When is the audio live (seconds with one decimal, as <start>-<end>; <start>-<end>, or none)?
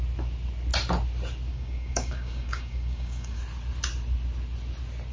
0.0-1.5; 3.4-5.1